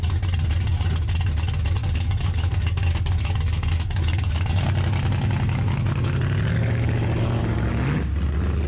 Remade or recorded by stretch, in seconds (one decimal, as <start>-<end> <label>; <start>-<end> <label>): 0.0-1.8 recorded; 1.8-4.6 remade; 4.6-6.5 recorded; 6.5-7.7 remade; 7.7-8.7 recorded